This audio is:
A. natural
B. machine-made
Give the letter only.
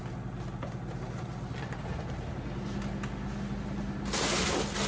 A